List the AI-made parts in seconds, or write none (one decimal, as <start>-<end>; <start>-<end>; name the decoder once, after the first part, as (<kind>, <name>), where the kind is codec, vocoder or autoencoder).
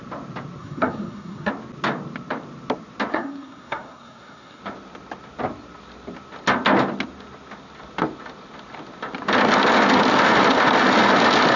0.6-1.5 (codec, SNAC); 3.1-4.6